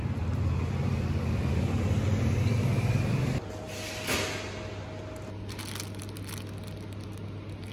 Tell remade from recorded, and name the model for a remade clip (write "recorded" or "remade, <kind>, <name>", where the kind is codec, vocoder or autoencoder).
recorded